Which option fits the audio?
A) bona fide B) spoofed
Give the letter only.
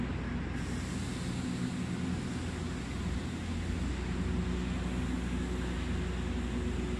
A